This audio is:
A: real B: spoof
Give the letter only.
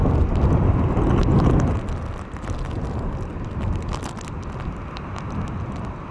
A